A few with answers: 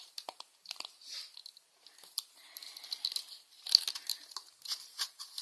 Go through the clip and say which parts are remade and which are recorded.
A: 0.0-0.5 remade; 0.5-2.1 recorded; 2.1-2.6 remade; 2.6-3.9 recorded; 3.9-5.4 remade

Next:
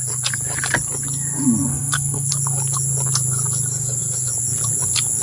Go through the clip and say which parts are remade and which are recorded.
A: 0.0-1.7 recorded; 1.7-2.3 remade; 2.3-5.2 recorded

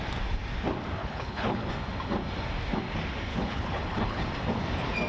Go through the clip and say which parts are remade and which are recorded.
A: 0.0-1.0 recorded; 1.0-1.7 remade; 1.7-3.3 recorded; 3.3-4.2 remade; 4.2-5.1 recorded

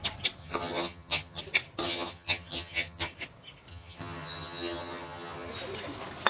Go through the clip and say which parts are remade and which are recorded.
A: 0.0-0.4 recorded; 0.4-1.4 remade; 1.4-1.8 recorded; 1.8-3.1 remade; 3.1-3.7 recorded; 3.7-5.5 remade; 5.5-6.3 recorded

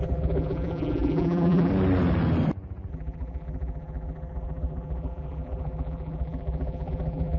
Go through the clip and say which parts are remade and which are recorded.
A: 0.0-1.7 remade; 1.7-2.9 recorded; 2.9-7.4 remade